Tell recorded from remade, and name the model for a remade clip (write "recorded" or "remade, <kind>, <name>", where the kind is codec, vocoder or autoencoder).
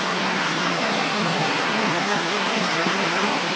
remade, codec, SNAC